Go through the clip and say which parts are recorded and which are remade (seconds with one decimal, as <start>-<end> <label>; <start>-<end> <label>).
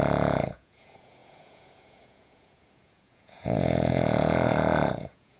0.0-5.4 remade